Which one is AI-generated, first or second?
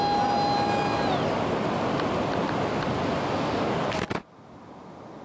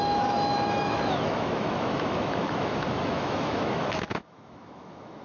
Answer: second